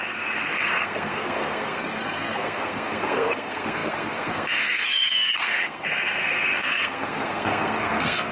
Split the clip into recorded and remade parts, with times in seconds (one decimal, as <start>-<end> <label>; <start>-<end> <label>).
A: 0.0-8.3 remade